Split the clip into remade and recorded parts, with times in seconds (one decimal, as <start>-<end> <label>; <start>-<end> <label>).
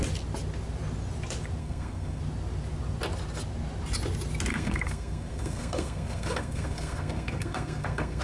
0.0-1.6 recorded; 1.6-2.2 remade; 2.2-4.5 recorded; 4.5-8.2 remade